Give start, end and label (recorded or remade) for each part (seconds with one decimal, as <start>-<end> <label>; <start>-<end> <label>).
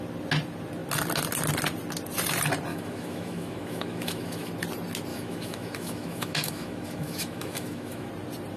0.0-2.7 recorded; 2.7-4.5 remade; 4.5-5.1 recorded; 5.1-8.1 remade; 8.1-8.6 recorded